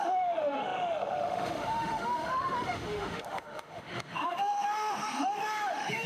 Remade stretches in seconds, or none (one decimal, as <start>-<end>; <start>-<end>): 0.0-6.1

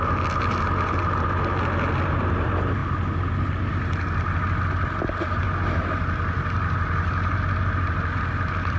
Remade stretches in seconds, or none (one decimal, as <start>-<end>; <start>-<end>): none

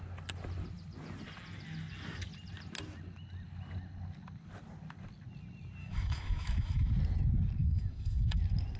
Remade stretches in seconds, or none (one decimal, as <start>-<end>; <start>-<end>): 5.8-6.9; 7.6-8.4

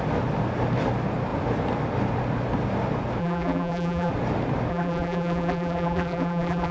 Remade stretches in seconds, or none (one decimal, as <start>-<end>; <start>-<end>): 3.2-4.1; 4.7-6.7